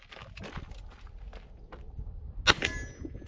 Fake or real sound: real